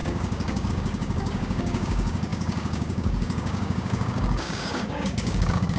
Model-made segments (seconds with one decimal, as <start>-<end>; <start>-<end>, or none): 0.0-5.8